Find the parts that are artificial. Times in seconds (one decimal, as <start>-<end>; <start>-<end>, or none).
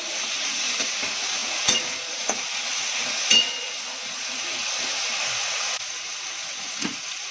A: 0.0-7.3